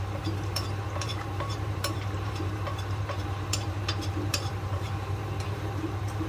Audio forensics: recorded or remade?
remade